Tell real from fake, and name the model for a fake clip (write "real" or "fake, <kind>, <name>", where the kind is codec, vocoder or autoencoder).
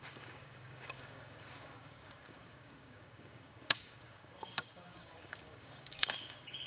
fake, codec, DAC